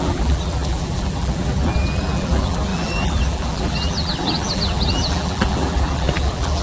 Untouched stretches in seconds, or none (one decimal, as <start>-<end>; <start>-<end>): none